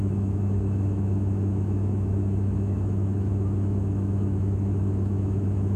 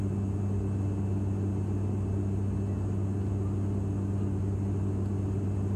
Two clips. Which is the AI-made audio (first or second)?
first